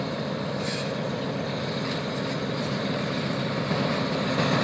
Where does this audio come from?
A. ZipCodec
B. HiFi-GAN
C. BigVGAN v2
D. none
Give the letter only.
D